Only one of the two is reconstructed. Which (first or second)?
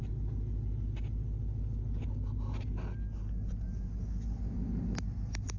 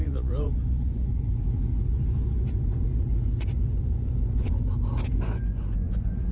second